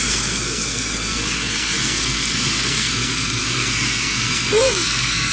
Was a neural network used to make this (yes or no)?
yes